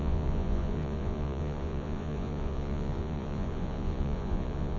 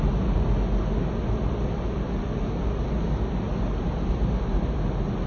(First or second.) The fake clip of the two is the first